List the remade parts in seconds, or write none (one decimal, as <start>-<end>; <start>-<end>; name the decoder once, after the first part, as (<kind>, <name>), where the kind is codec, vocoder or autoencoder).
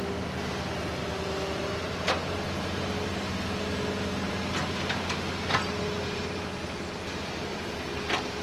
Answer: none